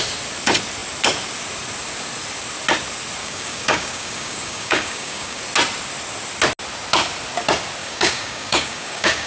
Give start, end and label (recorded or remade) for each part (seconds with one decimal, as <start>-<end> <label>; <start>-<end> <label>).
0.0-3.2 recorded; 3.2-5.4 remade; 5.4-7.8 recorded; 7.8-9.3 remade